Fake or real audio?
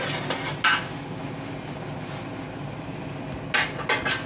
real